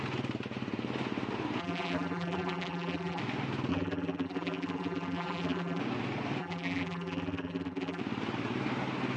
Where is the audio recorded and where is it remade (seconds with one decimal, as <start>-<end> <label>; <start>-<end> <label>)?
0.0-1.6 recorded; 1.6-3.2 remade; 3.2-3.7 recorded; 3.7-5.8 remade; 5.8-6.4 recorded; 6.4-8.0 remade; 8.0-9.2 recorded